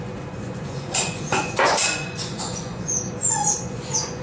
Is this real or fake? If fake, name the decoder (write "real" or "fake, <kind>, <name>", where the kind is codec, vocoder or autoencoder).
fake, vocoder, Vocos